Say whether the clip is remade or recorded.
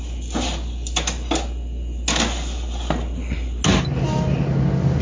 recorded